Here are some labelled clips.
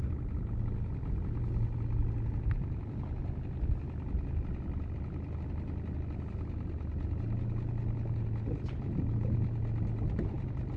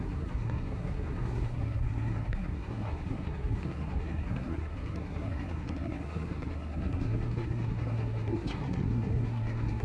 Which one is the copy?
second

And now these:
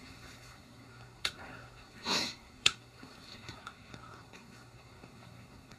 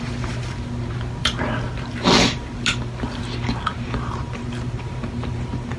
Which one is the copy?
first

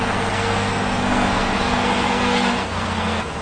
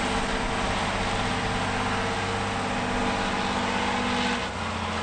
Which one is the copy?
first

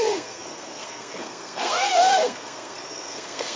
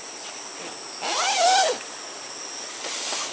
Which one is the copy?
first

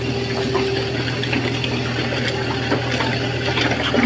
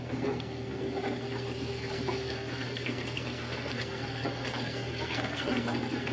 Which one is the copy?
second